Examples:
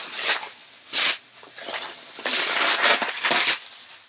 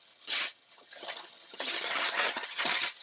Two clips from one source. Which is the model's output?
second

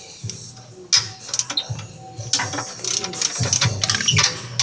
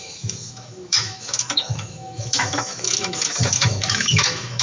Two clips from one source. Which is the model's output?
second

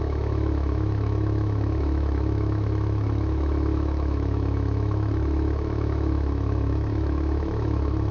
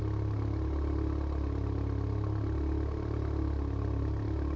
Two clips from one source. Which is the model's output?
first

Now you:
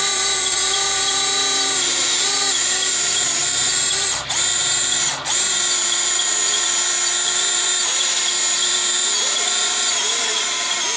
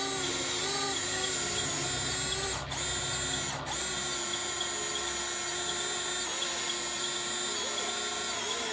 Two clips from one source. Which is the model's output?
first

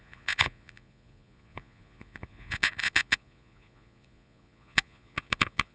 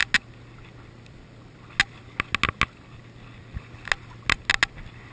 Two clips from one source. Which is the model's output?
first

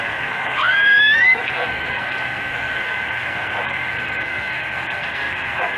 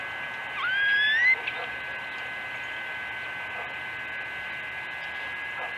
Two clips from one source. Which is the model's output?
first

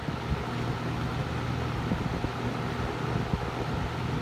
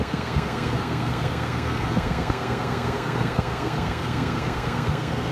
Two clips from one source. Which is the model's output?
second